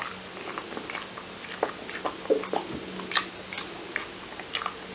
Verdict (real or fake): real